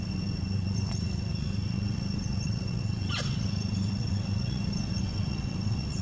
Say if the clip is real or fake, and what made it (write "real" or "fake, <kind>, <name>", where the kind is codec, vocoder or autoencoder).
fake, vocoder, WaveNeXt